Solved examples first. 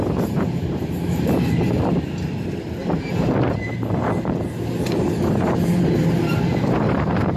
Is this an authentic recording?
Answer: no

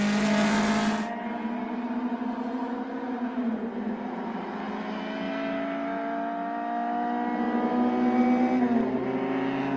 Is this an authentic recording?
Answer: yes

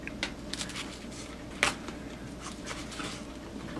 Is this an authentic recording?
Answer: yes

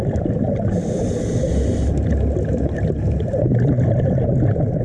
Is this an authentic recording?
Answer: yes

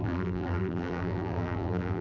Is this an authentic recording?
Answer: no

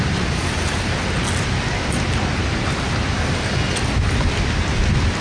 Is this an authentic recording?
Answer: yes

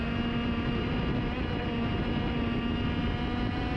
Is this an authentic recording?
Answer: yes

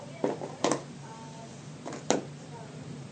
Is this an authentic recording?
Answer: no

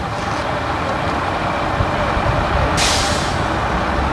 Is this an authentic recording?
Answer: yes